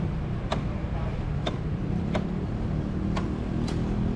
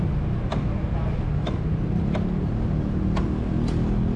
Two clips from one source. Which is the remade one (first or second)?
first